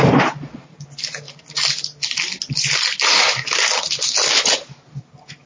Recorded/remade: recorded